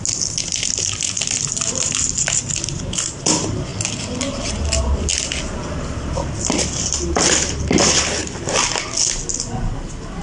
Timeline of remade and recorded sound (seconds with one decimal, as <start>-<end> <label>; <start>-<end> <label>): 0.0-10.2 recorded